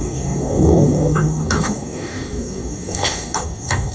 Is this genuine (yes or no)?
no